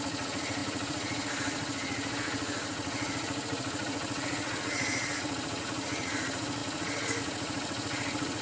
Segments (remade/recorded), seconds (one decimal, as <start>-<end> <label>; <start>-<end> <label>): 0.0-8.4 remade